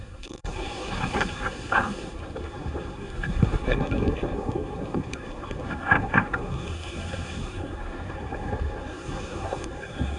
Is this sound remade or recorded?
remade